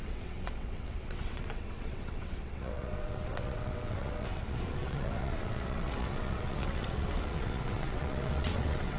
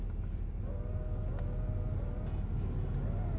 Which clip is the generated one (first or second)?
first